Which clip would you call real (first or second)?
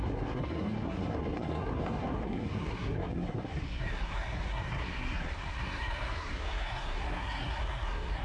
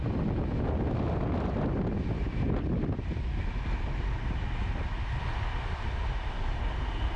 second